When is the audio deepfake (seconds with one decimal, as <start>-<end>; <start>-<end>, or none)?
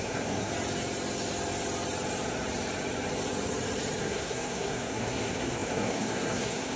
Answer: 0.0-0.5; 4.0-6.8